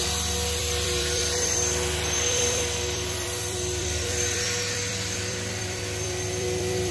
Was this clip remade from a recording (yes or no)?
yes